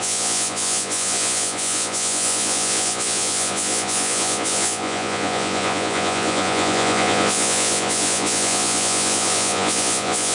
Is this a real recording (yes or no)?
no